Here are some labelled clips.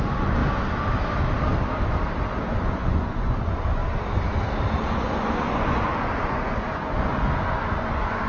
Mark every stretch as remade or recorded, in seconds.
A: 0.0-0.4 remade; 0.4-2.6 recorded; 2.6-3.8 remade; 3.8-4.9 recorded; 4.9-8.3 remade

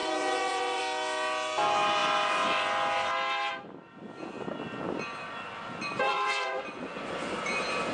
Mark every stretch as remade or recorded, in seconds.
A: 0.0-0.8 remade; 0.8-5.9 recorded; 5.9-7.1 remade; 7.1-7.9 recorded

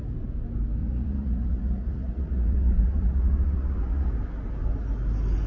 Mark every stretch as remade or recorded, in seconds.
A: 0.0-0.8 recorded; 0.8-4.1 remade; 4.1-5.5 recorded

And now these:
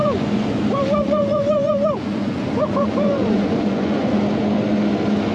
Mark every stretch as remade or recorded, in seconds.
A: 0.0-0.6 remade; 0.6-1.0 recorded; 1.0-4.2 remade; 4.2-5.3 recorded